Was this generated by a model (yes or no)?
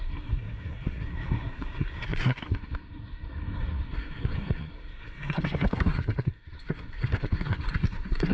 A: yes